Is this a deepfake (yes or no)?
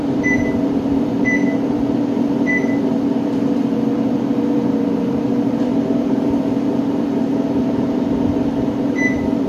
yes